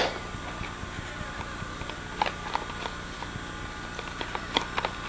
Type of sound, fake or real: real